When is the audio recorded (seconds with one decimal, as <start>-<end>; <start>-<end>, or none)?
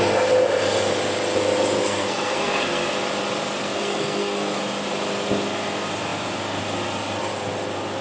0.0-1.8; 2.9-3.6; 4.6-8.0